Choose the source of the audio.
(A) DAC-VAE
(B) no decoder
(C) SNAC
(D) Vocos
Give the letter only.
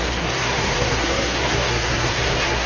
C